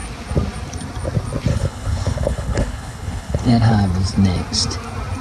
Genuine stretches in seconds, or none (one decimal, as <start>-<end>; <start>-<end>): 0.0-1.5; 3.7-5.2